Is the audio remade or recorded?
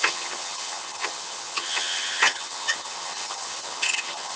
remade